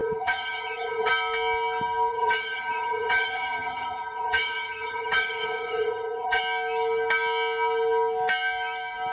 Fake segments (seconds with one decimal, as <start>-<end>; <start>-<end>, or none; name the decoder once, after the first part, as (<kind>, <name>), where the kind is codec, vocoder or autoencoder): 0.0-1.1 (vocoder, HiFi-GAN); 2.1-6.4